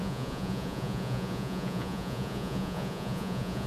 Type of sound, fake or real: fake